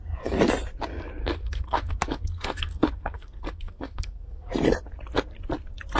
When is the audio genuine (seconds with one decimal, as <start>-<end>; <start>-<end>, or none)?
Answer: 0.0-1.2; 4.5-6.0